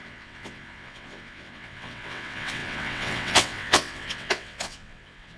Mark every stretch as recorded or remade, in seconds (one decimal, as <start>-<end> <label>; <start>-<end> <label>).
0.0-5.4 remade